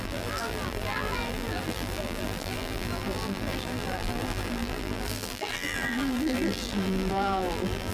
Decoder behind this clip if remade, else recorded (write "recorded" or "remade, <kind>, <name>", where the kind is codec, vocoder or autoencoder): remade, vocoder, BigVGAN v2